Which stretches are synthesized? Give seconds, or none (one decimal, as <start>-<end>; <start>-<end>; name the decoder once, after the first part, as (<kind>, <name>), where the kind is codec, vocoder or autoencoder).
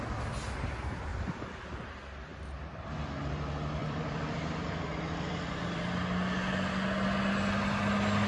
1.1-1.9 (vocoder, BigVGAN v2); 3.8-5.8